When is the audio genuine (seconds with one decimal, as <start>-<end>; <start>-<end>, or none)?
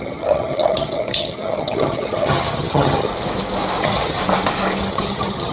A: 3.1-3.8; 4.2-4.8